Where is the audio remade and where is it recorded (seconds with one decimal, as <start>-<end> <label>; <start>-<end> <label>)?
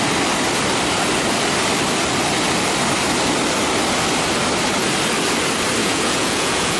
0.0-5.8 recorded; 5.8-6.8 remade